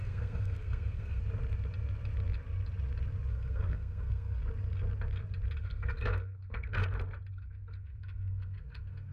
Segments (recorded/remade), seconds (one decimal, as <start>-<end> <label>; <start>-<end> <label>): 0.0-1.2 remade; 1.2-3.3 recorded; 3.3-4.4 remade; 4.4-5.6 recorded; 5.6-6.8 remade; 6.8-7.3 recorded; 7.3-9.1 remade